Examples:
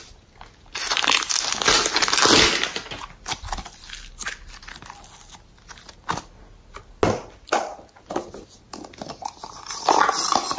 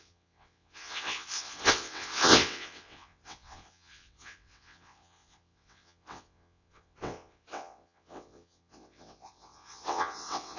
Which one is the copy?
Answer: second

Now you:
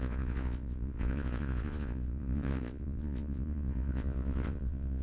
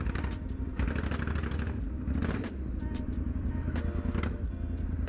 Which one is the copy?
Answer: first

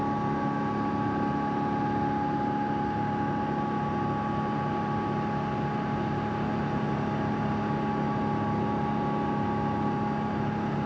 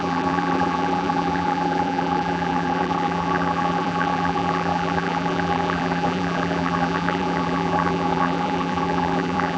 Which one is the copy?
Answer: second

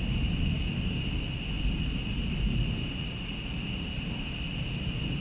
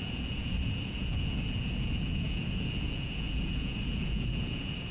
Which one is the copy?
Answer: second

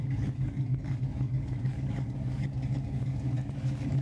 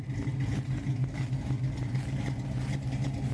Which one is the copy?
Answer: first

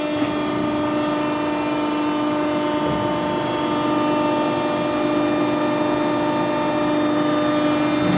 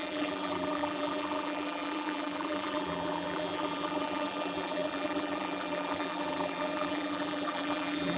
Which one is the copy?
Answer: second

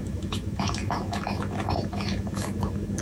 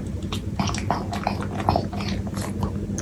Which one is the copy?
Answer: first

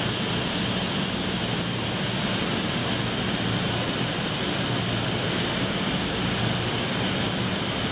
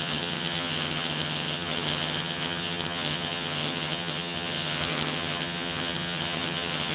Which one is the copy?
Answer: second